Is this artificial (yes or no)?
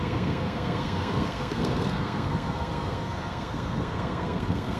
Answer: yes